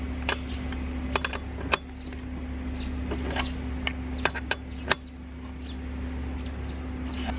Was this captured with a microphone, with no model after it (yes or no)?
yes